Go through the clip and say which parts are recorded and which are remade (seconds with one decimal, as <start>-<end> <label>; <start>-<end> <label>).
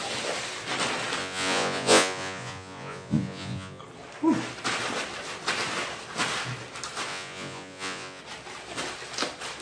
0.0-1.2 recorded; 1.2-3.8 remade; 3.8-7.1 recorded; 7.1-8.2 remade; 8.2-9.6 recorded